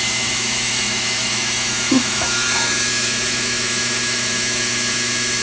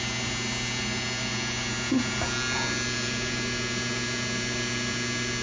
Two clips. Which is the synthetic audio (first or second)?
first